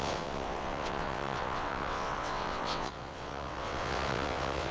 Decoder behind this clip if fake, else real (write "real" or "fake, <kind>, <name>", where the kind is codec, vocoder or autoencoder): fake, vocoder, WaveNeXt